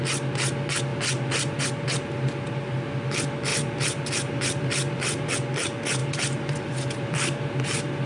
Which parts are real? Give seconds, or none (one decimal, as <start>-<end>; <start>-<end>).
0.0-3.5; 5.3-6.0

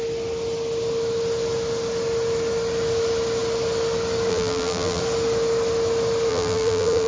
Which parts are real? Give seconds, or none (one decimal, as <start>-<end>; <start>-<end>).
0.0-4.3; 5.0-6.3

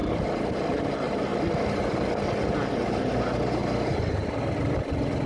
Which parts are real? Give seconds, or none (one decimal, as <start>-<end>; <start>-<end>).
1.3-2.4; 3.9-5.3

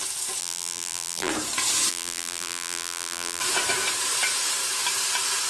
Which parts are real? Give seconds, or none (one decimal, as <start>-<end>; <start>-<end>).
0.0-0.4; 1.3-1.9; 3.4-5.5

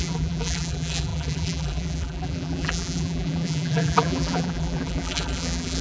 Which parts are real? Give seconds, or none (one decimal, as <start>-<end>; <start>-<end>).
none

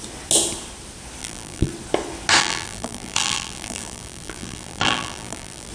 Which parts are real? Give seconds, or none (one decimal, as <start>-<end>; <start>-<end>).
0.0-1.2; 1.7-2.4

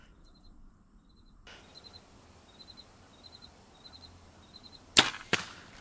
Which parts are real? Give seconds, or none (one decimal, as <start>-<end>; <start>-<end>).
1.1-5.8